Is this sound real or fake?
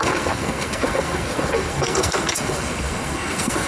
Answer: fake